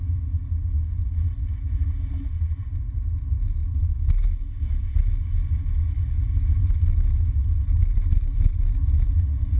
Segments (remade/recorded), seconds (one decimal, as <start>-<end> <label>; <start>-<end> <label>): 0.0-9.6 recorded